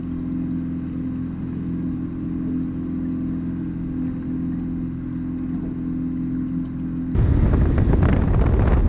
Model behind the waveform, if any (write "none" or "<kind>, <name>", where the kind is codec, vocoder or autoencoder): none